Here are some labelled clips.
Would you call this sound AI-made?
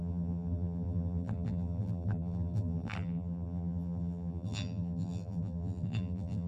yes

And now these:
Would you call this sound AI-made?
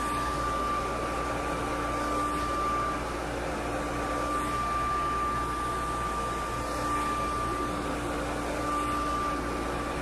no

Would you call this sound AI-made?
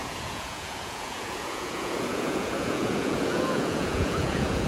yes